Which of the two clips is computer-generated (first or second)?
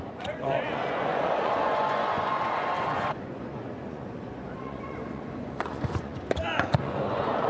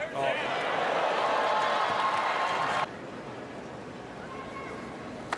first